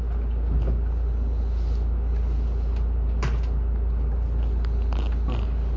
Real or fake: real